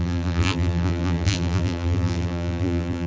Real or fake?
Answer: fake